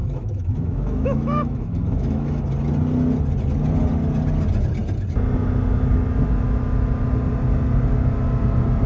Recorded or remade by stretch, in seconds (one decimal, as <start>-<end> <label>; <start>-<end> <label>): 0.0-2.4 remade; 2.4-8.9 recorded